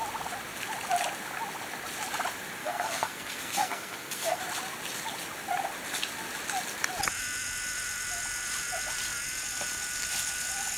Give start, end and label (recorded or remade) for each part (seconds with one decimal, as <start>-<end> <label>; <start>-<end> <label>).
0.0-2.6 recorded; 2.6-4.4 remade; 4.4-10.8 recorded